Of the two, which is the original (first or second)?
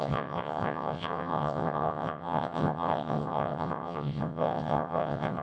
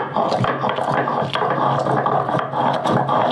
second